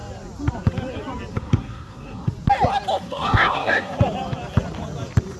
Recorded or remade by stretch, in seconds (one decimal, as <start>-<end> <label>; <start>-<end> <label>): 0.0-1.3 recorded; 1.3-2.3 remade; 2.3-2.9 recorded; 2.9-4.0 remade; 4.0-5.4 recorded